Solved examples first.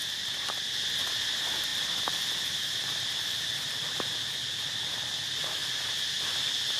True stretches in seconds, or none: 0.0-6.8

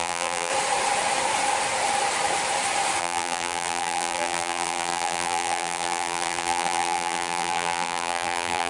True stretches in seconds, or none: 0.5-3.0